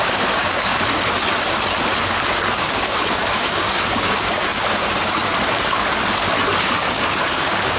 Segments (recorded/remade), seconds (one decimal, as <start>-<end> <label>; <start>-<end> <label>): 0.0-0.7 remade; 0.7-2.5 recorded; 2.5-5.3 remade; 5.3-6.6 recorded; 6.6-7.8 remade